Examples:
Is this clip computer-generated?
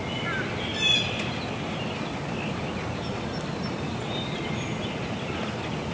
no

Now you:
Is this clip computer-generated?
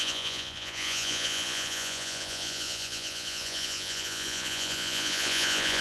yes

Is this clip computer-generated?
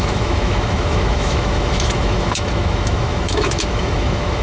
yes